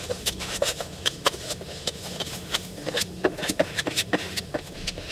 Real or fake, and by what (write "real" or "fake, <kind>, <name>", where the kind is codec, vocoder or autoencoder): fake, autoencoder, DAC-VAE